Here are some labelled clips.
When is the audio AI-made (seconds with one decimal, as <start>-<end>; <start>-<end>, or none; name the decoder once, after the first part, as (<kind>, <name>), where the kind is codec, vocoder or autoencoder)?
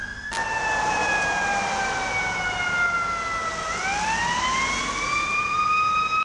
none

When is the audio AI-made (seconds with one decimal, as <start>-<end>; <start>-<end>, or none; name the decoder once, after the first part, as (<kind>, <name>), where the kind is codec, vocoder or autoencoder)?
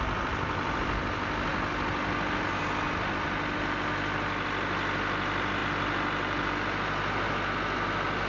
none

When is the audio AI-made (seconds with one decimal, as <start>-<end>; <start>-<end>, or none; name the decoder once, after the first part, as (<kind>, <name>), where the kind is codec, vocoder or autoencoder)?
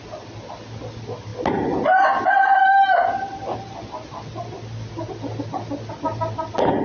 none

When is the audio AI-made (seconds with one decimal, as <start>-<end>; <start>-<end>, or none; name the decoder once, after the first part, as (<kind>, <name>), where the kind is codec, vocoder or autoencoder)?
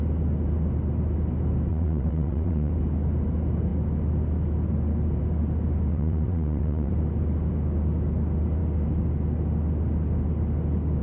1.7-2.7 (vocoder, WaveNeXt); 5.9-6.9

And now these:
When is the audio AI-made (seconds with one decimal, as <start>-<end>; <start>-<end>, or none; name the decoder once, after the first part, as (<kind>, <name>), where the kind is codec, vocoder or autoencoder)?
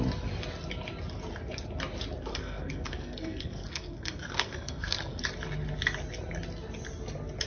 2.3-5.2 (codec, SNAC)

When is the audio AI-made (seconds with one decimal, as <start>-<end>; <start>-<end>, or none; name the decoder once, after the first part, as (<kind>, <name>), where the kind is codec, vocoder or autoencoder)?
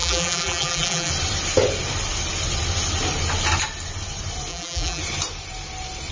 0.0-1.1 (vocoder, BigVGAN v2); 4.5-5.0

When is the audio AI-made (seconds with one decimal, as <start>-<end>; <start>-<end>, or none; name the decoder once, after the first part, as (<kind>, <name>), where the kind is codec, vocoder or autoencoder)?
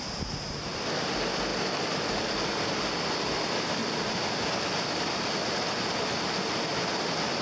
none